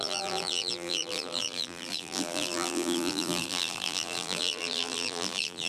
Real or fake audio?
fake